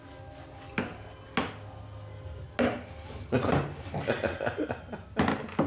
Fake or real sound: real